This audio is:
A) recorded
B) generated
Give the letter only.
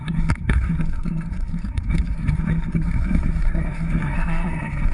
B